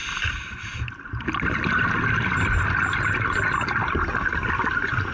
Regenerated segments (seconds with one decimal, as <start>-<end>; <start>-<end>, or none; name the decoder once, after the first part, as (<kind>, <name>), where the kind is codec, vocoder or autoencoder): none